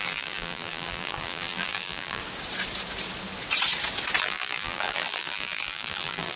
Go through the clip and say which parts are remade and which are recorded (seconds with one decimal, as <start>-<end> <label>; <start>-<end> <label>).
0.0-2.2 remade; 2.2-4.2 recorded; 4.2-6.4 remade

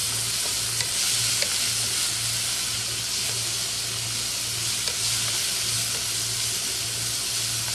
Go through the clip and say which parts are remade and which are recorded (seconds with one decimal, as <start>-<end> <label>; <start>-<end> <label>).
0.0-7.7 recorded

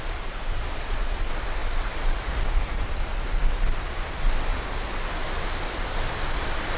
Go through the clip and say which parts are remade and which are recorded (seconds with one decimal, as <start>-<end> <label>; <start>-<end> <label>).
0.0-1.6 remade; 1.6-2.6 recorded; 2.6-3.1 remade; 3.1-3.6 recorded; 3.6-4.5 remade; 4.5-5.7 recorded; 5.7-6.8 remade

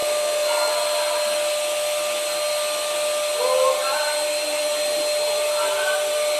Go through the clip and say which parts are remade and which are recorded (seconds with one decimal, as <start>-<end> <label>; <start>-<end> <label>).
0.0-0.7 remade; 0.7-6.4 recorded